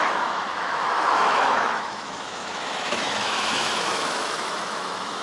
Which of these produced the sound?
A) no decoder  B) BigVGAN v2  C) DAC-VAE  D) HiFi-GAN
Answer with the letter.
C